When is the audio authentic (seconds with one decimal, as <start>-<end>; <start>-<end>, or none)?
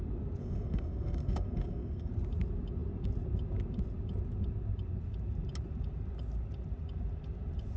0.0-0.4; 2.1-7.8